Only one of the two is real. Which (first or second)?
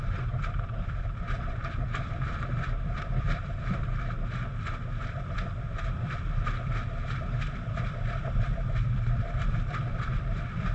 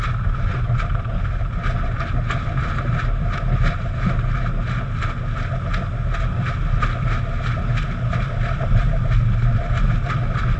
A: second